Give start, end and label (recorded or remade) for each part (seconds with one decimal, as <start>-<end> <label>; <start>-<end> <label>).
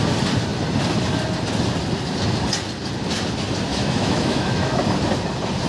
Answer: 0.0-3.7 recorded; 3.7-4.8 remade; 4.8-5.7 recorded